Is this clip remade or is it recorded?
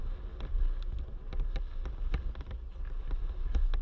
recorded